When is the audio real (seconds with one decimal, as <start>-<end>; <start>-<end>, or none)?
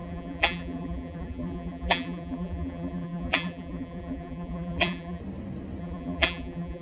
5.2-5.8